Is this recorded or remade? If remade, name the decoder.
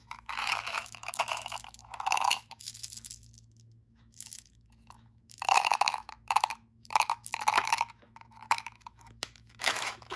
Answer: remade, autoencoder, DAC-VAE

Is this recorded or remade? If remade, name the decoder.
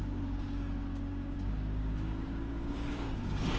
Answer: remade, codec, DAC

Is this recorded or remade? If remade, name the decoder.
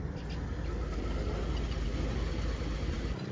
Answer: recorded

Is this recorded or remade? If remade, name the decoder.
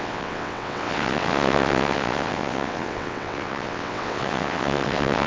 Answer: remade, vocoder, WaveNeXt